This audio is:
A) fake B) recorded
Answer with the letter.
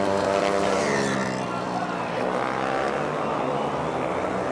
B